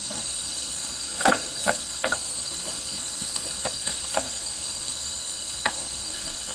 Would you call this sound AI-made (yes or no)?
yes